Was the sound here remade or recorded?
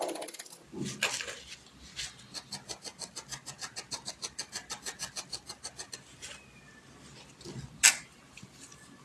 recorded